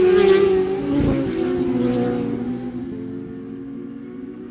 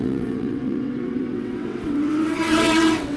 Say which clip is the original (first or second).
first